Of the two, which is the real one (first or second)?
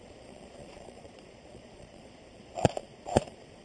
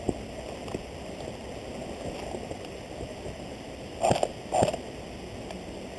second